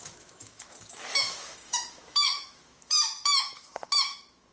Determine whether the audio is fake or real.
fake